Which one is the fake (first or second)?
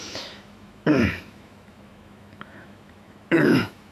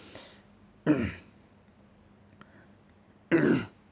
first